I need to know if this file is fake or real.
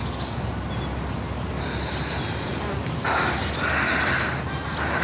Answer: real